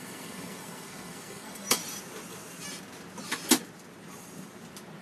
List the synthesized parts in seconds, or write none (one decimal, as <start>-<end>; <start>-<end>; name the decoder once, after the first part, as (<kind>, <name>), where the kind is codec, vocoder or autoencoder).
0.0-1.8 (codec, SNAC)